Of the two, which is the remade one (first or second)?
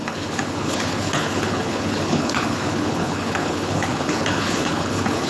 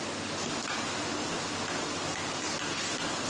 first